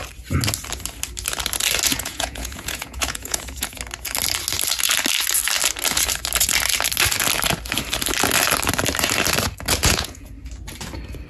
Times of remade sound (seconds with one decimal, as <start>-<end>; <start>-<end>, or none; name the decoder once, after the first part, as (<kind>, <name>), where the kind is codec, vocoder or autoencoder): 1.9-3.8 (vocoder, Vocos); 9.8-10.3